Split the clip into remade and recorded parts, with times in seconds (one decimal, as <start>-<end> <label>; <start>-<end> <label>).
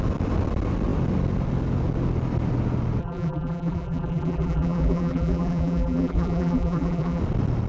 0.0-3.0 recorded; 3.0-7.2 remade; 7.2-7.7 recorded